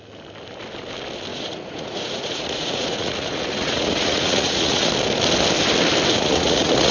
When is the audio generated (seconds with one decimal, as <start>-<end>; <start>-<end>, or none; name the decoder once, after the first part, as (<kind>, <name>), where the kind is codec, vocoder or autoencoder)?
1.3-4.9 (vocoder, Vocos); 6.1-6.9